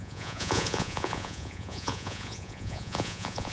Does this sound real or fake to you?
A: fake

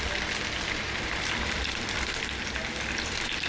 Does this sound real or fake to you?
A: real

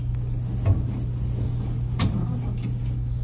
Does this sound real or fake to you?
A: real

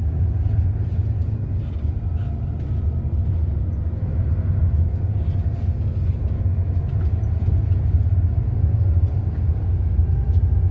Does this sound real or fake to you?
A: real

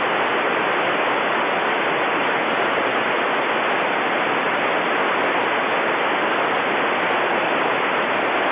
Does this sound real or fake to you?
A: real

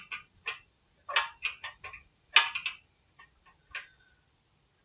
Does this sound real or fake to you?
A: real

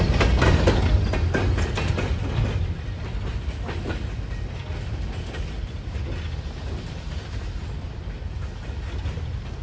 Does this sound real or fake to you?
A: real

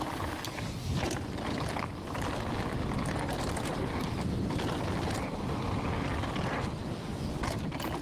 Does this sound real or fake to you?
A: real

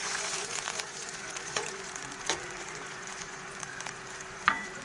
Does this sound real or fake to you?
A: fake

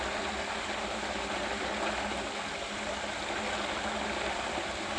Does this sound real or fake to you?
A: real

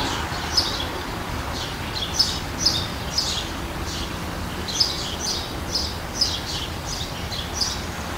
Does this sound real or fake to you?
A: real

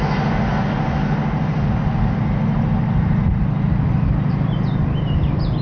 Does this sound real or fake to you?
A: real